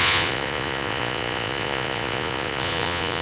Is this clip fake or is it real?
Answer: fake